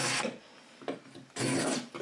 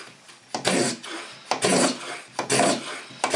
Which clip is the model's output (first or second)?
second